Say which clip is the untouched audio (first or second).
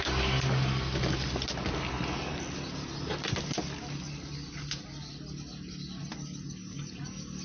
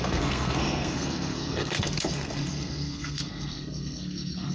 first